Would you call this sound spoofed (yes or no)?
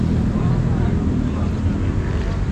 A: no